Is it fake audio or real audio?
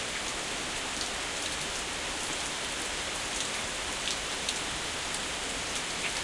real